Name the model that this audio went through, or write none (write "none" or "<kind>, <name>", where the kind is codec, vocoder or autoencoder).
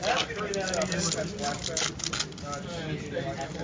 none